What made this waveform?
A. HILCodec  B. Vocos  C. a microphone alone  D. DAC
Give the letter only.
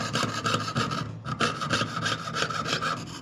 C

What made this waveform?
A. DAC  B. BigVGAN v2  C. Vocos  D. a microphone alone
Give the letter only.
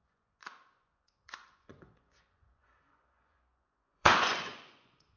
C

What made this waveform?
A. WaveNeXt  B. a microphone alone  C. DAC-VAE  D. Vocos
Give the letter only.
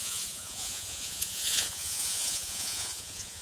D